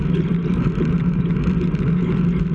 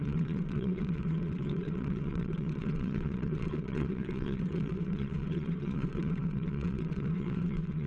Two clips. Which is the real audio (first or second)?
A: first